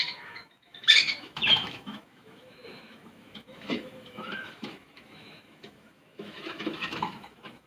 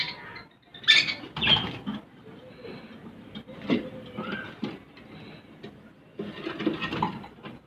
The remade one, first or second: first